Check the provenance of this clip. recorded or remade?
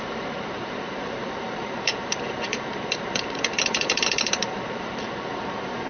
remade